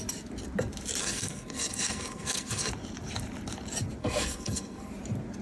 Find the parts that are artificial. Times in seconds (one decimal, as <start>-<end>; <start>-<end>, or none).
1.0-2.7; 4.0-4.9